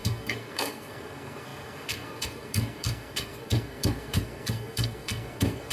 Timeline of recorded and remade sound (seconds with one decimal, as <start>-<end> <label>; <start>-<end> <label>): 0.0-5.7 remade